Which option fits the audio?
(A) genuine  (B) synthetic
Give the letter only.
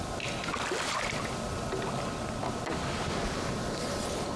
B